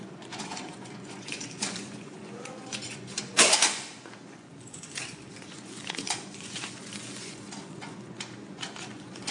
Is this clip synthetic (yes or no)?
yes